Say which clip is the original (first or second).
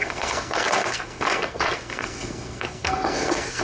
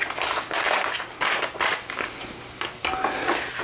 second